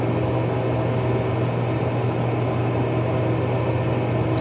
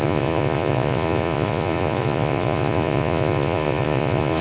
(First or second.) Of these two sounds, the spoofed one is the second